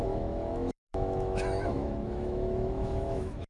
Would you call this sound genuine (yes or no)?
no